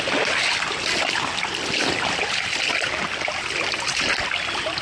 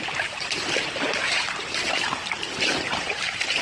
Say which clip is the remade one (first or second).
second